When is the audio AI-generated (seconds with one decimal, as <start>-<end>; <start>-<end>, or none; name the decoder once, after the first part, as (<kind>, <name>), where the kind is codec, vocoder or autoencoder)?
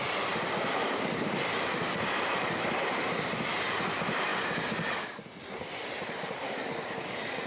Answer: 0.0-4.3 (vocoder, BigVGAN v2); 6.8-7.5